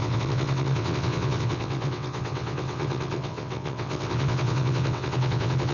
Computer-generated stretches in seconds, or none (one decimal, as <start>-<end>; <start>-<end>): 0.0-5.7